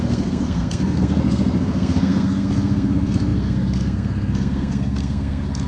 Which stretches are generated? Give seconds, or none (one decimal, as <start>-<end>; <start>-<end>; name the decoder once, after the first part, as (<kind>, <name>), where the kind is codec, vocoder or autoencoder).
0.0-5.7 (codec, SNAC)